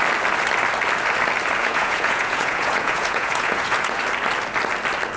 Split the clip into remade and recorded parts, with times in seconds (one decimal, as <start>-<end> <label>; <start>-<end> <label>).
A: 0.0-1.6 recorded; 1.6-4.0 remade; 4.0-5.2 recorded